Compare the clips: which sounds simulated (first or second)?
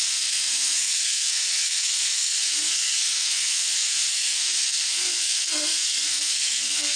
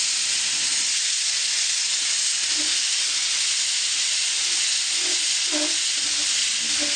first